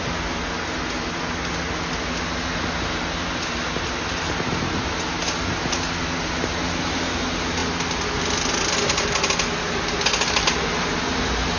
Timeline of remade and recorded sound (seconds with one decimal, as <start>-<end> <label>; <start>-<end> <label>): 0.0-11.6 recorded